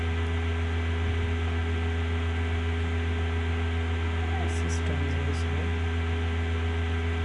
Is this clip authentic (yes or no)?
yes